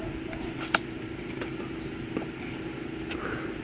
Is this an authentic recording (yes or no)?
yes